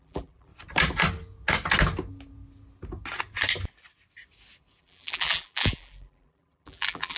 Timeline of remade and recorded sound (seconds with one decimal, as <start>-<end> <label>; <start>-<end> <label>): 0.0-0.5 remade; 0.5-4.8 recorded; 4.8-7.2 remade